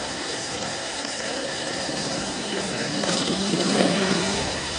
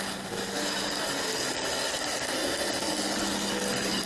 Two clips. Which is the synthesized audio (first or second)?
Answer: first